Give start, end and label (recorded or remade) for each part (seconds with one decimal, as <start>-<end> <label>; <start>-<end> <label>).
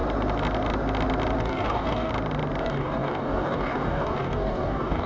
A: 0.0-1.4 recorded; 1.4-2.1 remade; 2.1-2.6 recorded; 2.6-5.1 remade